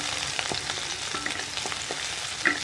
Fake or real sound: real